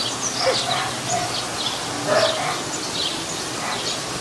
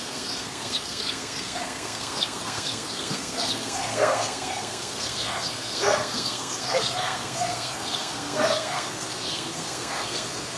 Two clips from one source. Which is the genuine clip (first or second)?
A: first